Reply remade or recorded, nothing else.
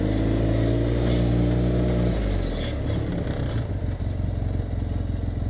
recorded